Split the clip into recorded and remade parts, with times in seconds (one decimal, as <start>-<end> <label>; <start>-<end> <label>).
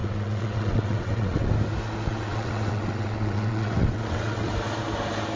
0.0-1.5 remade; 1.5-2.1 recorded; 2.1-4.5 remade; 4.5-5.4 recorded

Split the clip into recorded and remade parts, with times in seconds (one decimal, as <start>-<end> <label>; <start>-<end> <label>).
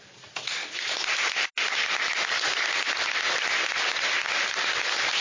0.0-5.2 recorded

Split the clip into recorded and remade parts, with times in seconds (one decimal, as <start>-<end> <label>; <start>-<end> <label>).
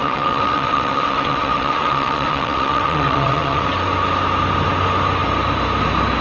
0.0-3.7 remade; 3.7-6.2 recorded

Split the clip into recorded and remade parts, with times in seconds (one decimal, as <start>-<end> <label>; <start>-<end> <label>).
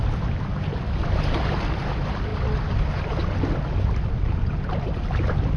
0.0-5.6 recorded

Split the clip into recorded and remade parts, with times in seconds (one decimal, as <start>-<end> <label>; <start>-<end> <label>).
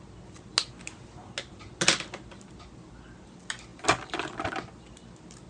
0.0-5.5 recorded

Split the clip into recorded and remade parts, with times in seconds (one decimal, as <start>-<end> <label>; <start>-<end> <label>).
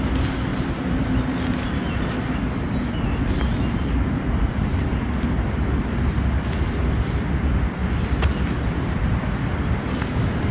0.0-10.5 recorded